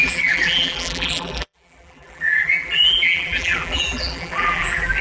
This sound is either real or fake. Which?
fake